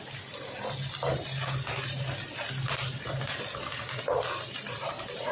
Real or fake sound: real